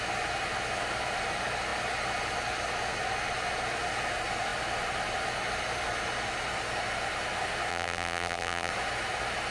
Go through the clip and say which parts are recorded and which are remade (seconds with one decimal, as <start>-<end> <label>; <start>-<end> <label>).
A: 0.0-7.7 recorded; 7.7-8.7 remade; 8.7-9.5 recorded